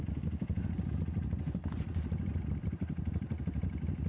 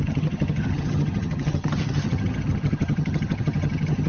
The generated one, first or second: second